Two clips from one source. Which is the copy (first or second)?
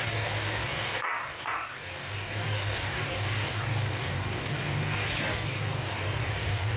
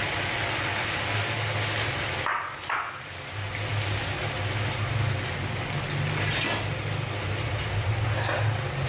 first